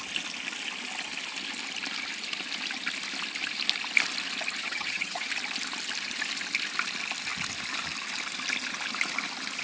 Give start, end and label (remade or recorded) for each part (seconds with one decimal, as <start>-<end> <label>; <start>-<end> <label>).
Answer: 0.0-4.6 recorded; 4.6-5.3 remade; 5.3-9.6 recorded